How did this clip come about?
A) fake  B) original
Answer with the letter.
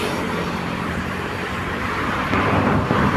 A